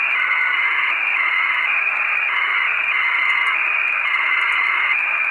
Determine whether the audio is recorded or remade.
recorded